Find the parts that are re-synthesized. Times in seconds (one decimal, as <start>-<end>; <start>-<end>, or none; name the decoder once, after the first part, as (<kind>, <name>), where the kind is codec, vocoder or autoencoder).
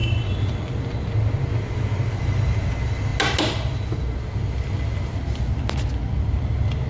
none